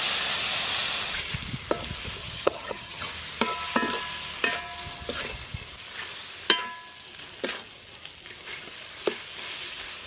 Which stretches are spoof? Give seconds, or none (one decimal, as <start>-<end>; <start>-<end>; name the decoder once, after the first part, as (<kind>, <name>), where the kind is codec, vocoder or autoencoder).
2.2-3.1 (vocoder, HiFi-GAN)